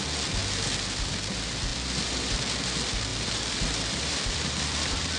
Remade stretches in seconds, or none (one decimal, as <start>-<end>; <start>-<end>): 0.4-1.1; 1.7-2.6; 3.1-5.2